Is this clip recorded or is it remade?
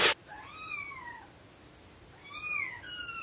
recorded